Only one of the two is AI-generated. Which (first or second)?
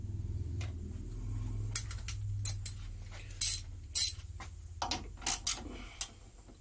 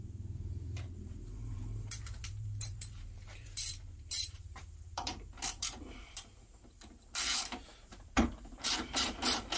second